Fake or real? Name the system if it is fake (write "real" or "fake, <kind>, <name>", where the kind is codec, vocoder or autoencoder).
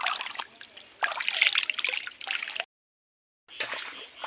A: real